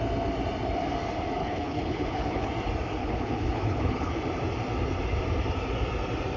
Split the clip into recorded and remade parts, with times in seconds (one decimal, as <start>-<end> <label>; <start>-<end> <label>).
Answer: 0.0-1.4 recorded; 1.4-2.5 remade; 2.5-3.0 recorded; 3.0-4.1 remade; 4.1-6.4 recorded